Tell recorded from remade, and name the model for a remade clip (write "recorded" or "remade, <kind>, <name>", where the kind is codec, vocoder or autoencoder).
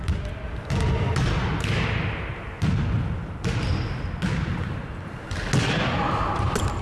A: recorded